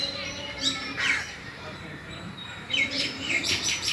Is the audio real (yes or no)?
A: no